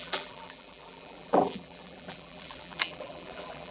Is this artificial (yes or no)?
yes